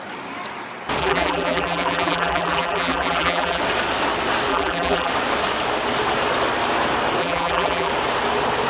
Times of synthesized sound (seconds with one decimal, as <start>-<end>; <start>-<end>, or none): 1.0-3.6; 4.5-5.1; 7.2-7.9